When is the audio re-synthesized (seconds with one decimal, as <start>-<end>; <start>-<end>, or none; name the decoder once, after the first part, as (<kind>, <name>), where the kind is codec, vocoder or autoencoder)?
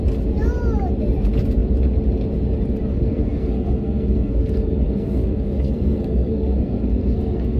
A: 2.9-7.6 (codec, SNAC)